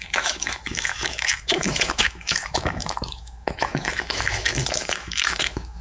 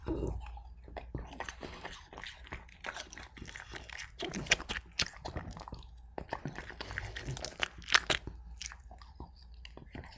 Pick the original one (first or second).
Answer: second